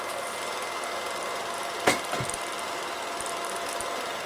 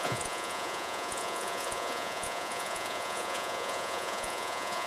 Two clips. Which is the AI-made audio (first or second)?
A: second